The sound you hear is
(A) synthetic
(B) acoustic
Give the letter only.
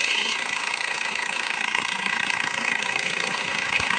A